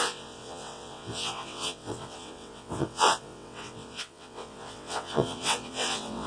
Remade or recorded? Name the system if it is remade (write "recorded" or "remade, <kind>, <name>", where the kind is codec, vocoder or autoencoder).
remade, vocoder, WaveNeXt